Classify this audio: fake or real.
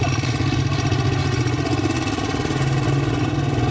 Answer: real